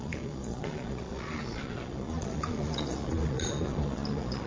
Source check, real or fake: fake